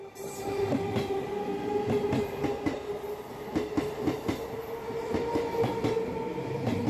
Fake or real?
real